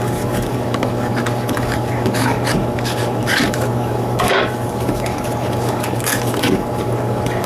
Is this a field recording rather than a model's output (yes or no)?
no